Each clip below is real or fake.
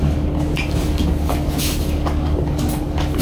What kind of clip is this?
fake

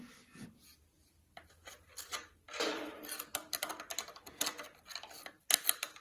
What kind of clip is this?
real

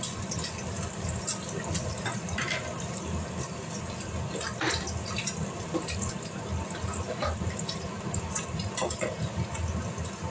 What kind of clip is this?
real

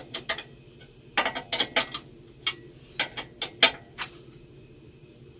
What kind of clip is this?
real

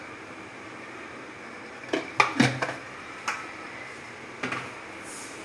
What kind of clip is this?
real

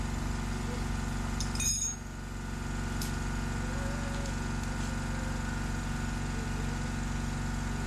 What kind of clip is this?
real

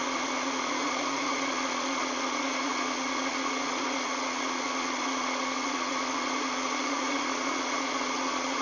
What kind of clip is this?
fake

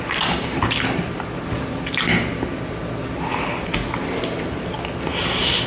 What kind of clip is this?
real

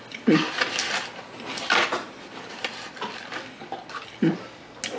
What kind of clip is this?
real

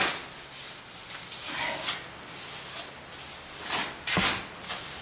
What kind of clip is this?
real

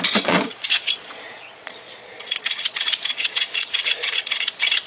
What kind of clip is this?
fake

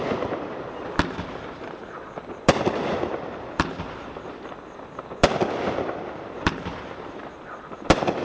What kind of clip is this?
fake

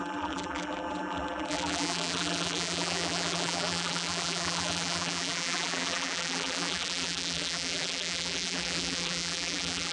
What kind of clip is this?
fake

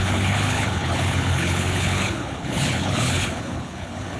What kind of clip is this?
fake